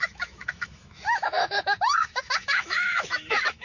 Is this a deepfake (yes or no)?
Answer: yes